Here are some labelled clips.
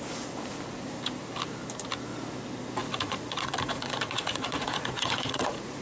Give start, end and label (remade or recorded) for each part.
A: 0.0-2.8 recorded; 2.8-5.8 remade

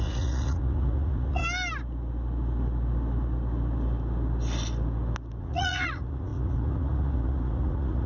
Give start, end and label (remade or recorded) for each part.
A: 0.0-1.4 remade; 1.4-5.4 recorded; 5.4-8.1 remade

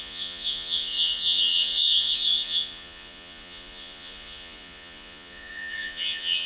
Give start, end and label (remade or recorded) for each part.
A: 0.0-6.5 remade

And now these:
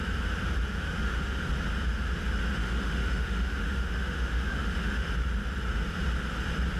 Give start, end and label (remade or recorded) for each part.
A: 0.0-0.7 recorded; 0.7-1.4 remade; 1.4-2.6 recorded; 2.6-5.1 remade; 5.1-6.8 recorded